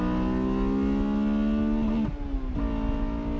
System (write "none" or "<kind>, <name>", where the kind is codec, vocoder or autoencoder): none